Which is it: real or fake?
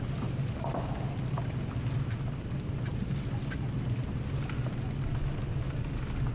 real